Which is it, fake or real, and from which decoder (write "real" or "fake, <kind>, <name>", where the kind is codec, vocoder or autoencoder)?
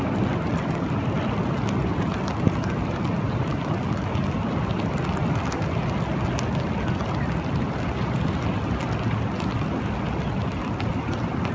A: real